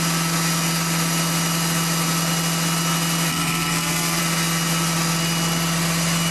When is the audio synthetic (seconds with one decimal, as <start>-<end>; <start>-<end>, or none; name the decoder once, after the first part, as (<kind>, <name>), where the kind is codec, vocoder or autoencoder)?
3.3-4.2 (codec, SNAC)